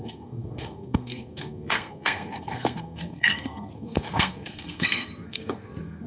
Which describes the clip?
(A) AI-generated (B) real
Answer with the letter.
A